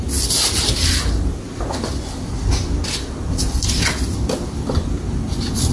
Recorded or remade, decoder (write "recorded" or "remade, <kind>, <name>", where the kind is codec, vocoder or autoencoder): recorded